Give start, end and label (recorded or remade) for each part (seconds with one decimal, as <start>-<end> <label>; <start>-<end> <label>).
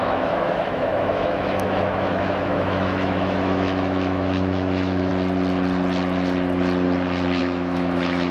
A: 0.0-5.1 remade; 5.1-7.4 recorded; 7.4-8.3 remade